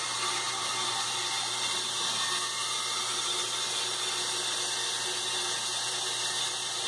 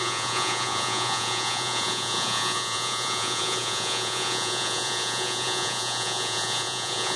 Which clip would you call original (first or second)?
first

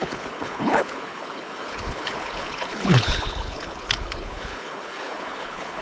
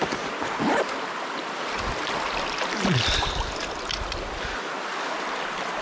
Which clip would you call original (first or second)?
second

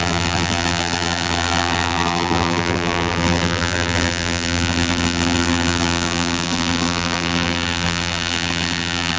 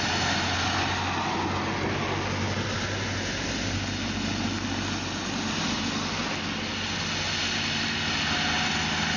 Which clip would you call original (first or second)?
second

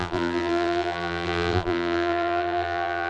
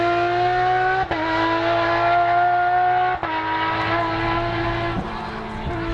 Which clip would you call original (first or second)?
second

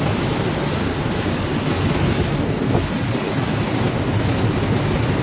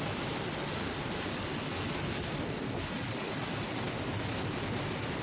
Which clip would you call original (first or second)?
first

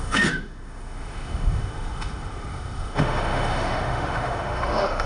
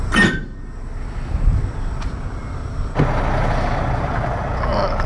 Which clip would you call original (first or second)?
second